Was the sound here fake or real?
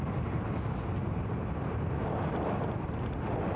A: real